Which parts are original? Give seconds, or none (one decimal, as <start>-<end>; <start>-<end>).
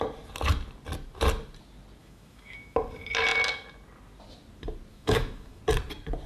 0.0-2.0; 2.8-4.9; 5.6-6.3